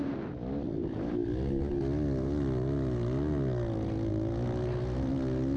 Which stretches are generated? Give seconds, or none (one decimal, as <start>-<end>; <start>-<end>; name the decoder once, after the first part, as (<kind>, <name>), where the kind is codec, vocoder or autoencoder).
none